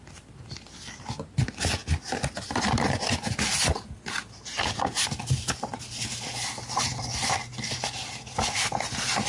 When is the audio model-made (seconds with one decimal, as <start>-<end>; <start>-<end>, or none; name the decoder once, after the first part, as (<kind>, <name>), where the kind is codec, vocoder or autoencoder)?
none